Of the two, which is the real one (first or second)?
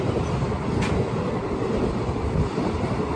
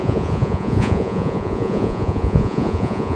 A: first